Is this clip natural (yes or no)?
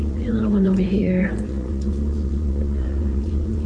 no